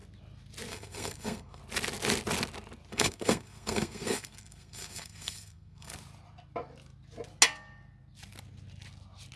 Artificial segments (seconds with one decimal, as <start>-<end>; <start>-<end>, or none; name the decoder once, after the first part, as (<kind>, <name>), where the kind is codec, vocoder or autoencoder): 0.7-1.6 (codec, SNAC); 2.9-5.9